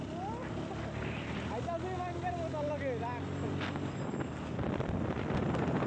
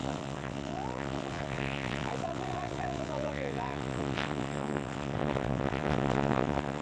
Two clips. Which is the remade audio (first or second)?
second